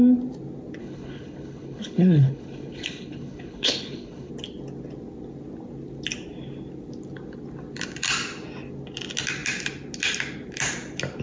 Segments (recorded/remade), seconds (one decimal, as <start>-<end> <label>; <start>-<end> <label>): 0.0-0.8 recorded; 0.8-4.3 remade; 4.3-11.2 recorded